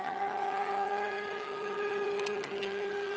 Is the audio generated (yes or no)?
yes